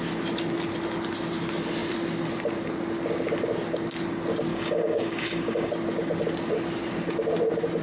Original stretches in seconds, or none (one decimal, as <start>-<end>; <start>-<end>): 0.0-4.5; 5.7-7.8